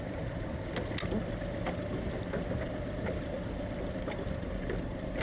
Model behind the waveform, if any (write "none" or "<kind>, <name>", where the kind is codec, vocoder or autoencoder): none